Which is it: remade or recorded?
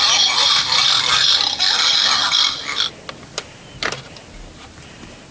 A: recorded